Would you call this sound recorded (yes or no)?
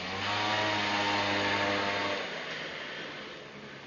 yes